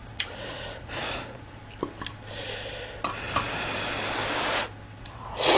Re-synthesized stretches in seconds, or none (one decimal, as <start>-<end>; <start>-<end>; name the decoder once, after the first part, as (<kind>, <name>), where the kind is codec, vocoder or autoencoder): 0.0-1.6 (vocoder, Vocos); 5.0-5.6